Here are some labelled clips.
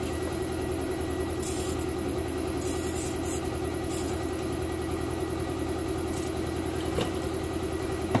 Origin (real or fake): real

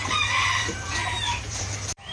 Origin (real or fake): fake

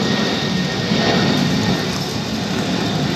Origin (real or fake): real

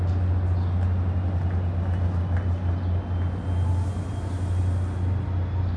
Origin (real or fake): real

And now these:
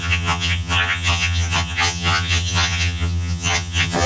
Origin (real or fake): fake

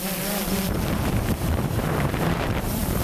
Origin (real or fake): fake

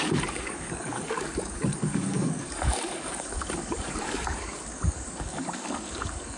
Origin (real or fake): fake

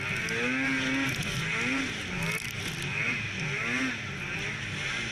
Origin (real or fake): real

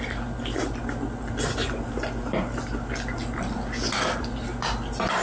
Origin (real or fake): real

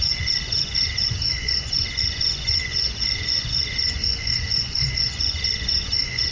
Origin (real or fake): fake